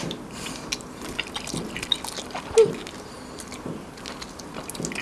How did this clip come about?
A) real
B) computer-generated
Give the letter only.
A